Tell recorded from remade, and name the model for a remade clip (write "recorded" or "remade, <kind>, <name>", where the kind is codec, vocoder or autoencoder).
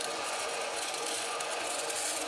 remade, vocoder, Vocos